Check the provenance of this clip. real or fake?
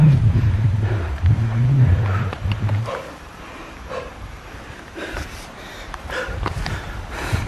fake